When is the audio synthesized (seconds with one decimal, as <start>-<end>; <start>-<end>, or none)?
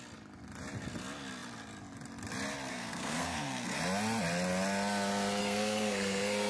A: 2.7-3.8; 5.4-6.5